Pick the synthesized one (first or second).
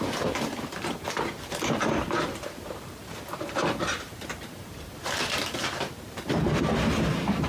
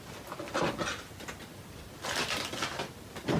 first